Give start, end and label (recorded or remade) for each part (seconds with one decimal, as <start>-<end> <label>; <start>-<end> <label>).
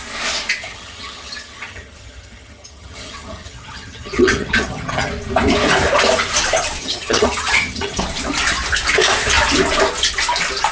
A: 0.0-0.6 recorded; 0.6-5.1 remade; 5.1-6.8 recorded; 6.8-8.0 remade; 8.0-10.7 recorded